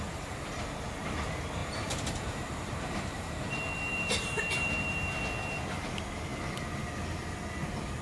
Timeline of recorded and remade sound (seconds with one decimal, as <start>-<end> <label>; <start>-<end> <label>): 0.0-1.6 recorded; 1.6-5.2 remade; 5.2-8.0 recorded